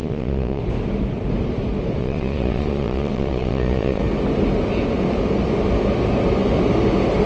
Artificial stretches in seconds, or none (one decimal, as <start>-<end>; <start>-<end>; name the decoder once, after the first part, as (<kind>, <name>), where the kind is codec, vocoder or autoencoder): 0.0-0.6 (vocoder, Vocos); 2.0-4.0